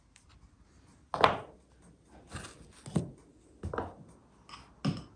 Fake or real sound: real